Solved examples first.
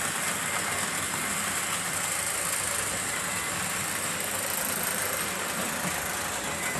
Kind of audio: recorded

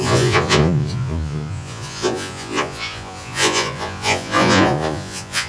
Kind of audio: remade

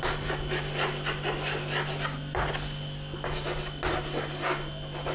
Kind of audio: recorded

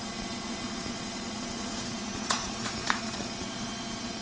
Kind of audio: remade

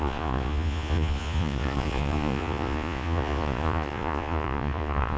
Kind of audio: remade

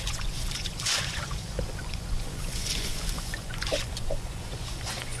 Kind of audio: remade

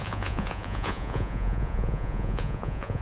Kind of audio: remade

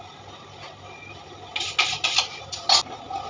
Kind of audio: recorded